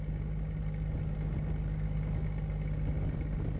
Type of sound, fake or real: real